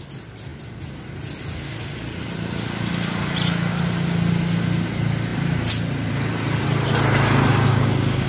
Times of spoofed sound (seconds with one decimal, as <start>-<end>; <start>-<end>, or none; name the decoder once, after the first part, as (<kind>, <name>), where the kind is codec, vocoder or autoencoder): 7.5-8.3 (codec, DAC)

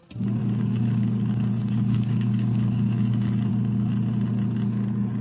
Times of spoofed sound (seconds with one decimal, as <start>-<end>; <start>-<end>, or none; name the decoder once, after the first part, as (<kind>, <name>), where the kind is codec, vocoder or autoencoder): 0.4-3.5 (codec, DAC)

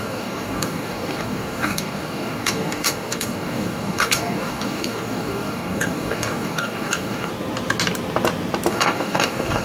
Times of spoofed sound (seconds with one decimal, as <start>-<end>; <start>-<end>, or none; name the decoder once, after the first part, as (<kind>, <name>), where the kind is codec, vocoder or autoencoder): 0.0-7.3 (codec, DAC); 8.7-9.6

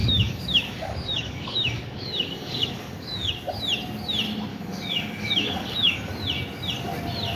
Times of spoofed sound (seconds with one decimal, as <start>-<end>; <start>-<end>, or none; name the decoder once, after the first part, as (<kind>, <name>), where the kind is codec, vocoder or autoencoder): 0.0-3.3 (codec, DAC); 4.5-6.1

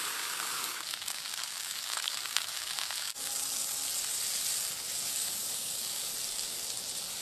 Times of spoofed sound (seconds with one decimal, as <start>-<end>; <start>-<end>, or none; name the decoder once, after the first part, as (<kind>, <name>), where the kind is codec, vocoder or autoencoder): 0.0-3.3 (codec, DAC); 5.1-6.1

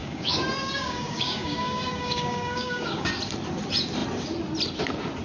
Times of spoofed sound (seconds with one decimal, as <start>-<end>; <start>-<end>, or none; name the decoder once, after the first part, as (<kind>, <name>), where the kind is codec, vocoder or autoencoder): 0.0-3.1 (codec, DAC)